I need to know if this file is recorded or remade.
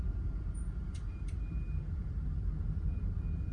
remade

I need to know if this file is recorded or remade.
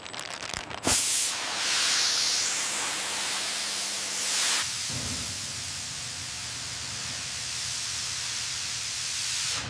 recorded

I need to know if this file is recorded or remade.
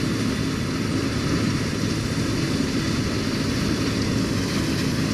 recorded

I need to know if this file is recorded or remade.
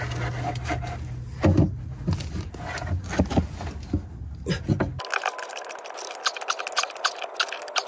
recorded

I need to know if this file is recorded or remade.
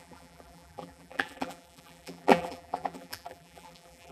remade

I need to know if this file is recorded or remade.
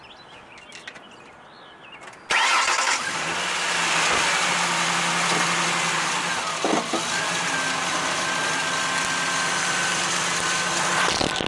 recorded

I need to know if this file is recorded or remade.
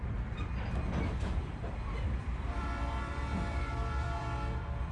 remade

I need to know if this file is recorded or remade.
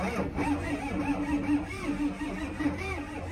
recorded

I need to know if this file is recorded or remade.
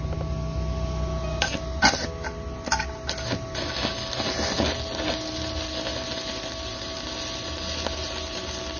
recorded